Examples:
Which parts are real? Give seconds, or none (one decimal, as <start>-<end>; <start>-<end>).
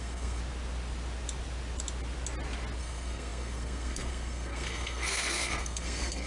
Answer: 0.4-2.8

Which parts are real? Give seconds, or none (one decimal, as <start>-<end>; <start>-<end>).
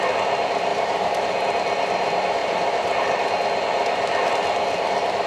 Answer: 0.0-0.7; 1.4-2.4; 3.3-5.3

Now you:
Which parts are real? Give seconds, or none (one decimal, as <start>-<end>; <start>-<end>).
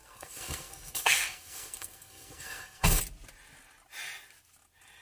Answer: 3.0-5.0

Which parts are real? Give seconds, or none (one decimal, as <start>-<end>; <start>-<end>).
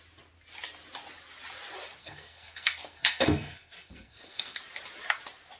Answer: 0.0-2.0; 4.6-5.6